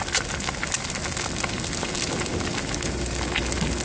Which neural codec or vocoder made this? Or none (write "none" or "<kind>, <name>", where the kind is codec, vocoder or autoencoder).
none